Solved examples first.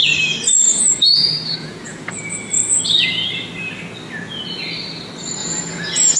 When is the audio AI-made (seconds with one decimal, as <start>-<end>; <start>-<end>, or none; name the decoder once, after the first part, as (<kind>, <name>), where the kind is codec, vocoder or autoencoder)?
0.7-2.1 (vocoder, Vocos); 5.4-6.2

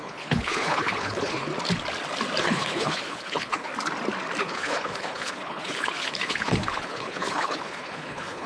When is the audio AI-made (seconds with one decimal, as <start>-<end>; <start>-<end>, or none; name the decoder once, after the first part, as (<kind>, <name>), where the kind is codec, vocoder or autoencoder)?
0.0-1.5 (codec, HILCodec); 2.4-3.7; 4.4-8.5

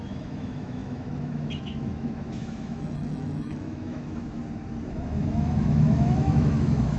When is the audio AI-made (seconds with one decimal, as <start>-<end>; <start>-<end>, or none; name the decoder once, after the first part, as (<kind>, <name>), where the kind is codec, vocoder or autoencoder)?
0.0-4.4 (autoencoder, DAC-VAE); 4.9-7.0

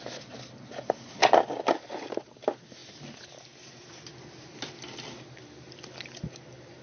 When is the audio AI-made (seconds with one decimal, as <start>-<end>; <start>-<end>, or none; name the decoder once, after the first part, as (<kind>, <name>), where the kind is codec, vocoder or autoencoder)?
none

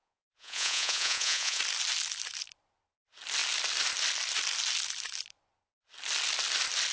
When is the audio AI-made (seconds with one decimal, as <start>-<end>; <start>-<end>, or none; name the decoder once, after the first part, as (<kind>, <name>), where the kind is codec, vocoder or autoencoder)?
0.0-1.6 (vocoder, Vocos)